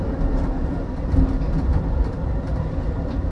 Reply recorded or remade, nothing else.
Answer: remade